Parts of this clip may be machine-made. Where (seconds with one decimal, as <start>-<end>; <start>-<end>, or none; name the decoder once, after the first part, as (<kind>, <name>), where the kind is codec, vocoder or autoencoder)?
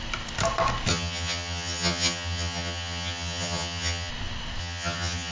0.9-4.1 (vocoder, HiFi-GAN); 4.6-5.3